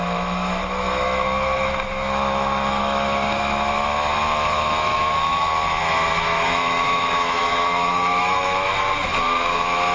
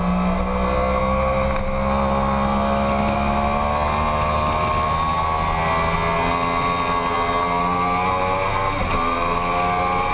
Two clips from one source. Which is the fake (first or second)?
first